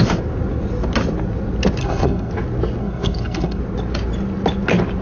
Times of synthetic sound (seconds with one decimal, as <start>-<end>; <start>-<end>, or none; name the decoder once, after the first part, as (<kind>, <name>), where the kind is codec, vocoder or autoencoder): 1.8-2.3 (codec, SNAC); 2.8-3.6